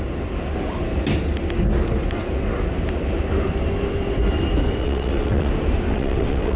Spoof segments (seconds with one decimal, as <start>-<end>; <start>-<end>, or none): 4.8-5.5; 5.9-6.6